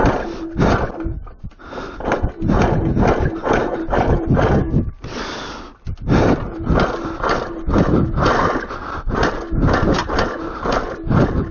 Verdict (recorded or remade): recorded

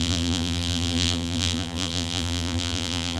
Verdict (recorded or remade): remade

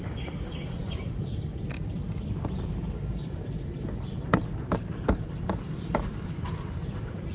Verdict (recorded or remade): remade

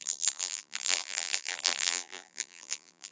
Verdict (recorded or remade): remade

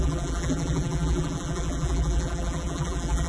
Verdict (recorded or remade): remade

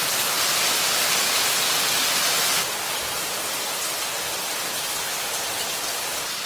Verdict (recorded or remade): recorded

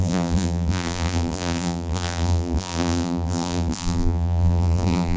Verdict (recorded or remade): remade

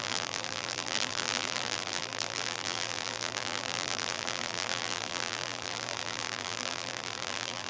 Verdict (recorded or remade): remade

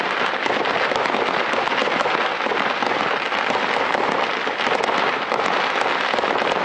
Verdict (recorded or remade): recorded